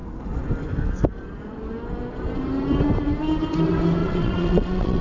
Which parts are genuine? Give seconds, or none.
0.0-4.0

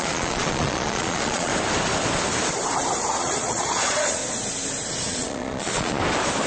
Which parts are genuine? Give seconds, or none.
1.5-3.1; 4.2-4.9; 6.0-6.5

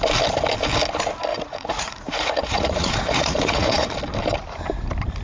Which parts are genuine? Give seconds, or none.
0.0-1.3; 3.9-5.2